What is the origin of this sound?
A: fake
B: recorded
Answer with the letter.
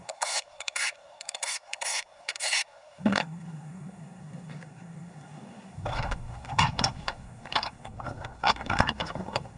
A